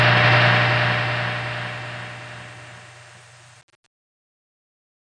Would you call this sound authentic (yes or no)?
yes